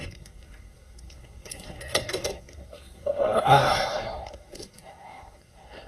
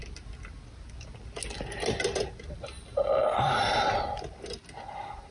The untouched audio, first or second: second